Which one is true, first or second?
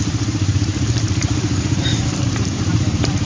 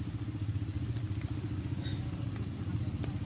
second